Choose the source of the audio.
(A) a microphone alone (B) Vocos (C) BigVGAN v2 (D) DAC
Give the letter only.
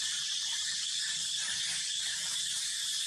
C